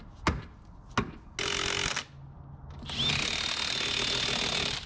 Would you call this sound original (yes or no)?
yes